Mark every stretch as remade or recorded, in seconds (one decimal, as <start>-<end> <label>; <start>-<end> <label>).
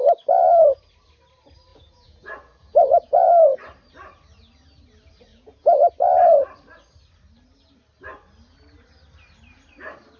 0.0-1.7 recorded; 1.7-3.3 remade; 3.3-5.3 recorded; 5.3-5.9 remade; 5.9-10.2 recorded